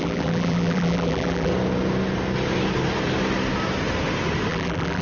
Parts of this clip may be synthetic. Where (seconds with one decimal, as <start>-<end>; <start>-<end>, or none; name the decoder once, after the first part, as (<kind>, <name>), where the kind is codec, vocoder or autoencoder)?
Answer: 0.0-1.5 (vocoder, BigVGAN v2); 4.5-5.0